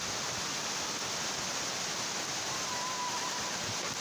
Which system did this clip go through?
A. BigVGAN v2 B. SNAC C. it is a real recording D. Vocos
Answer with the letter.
C